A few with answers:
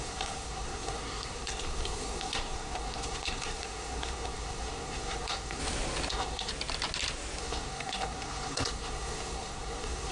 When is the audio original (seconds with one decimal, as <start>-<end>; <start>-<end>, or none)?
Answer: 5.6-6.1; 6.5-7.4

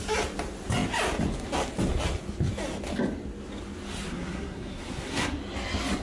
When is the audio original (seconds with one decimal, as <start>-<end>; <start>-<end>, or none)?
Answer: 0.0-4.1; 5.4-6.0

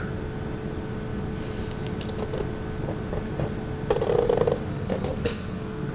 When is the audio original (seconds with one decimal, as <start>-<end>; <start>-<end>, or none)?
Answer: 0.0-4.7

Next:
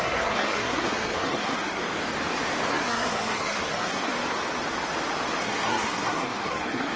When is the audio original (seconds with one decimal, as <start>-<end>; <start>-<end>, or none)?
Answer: 1.8-2.7; 4.1-5.4